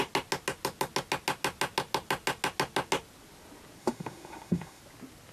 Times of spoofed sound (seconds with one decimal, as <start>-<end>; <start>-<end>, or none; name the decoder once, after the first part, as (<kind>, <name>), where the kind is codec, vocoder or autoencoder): 3.8-4.8 (autoencoder, DAC-VAE)